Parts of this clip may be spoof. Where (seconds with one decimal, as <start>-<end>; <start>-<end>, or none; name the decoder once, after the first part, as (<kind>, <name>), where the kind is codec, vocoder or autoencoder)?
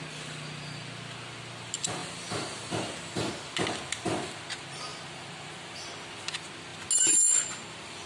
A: 4.9-5.9 (vocoder, BigVGAN v2)